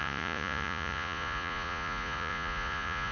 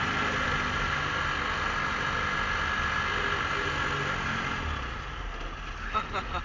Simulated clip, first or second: first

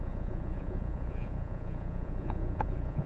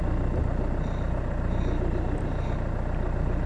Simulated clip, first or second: first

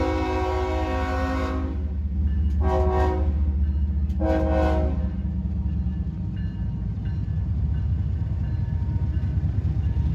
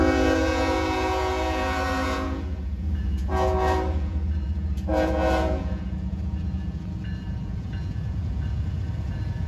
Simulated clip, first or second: second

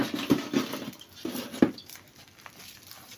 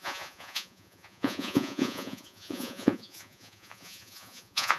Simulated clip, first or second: second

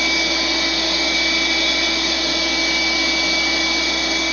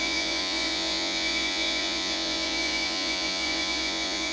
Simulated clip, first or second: second